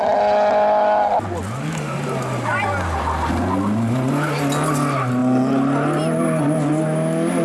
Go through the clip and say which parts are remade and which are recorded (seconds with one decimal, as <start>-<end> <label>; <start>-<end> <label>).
0.0-7.4 recorded